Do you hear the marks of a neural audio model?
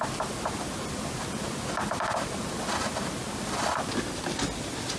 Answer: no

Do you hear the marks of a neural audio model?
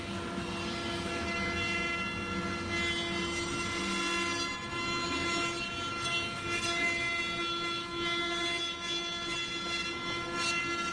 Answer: no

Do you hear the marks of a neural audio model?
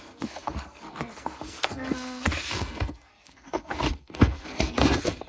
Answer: yes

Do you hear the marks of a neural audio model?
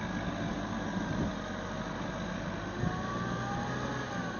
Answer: no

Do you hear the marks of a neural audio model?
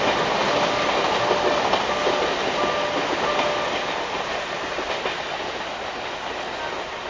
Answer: no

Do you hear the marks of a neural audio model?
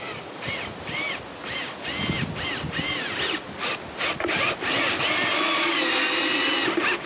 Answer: no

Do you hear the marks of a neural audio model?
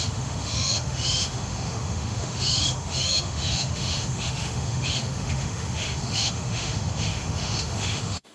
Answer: yes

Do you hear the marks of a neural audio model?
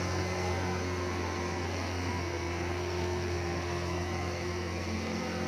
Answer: yes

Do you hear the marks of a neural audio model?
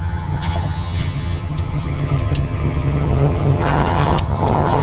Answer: yes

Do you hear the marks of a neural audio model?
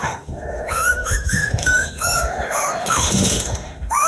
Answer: yes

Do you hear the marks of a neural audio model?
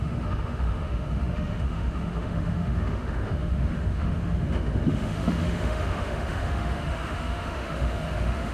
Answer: yes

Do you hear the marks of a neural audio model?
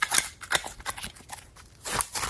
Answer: no